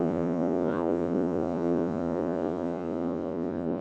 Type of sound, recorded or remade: remade